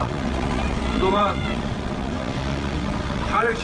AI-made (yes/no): yes